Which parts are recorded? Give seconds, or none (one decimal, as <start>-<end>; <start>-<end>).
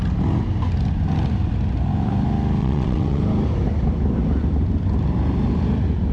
0.0-2.6; 3.2-6.1